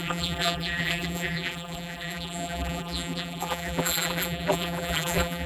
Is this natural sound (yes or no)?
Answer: no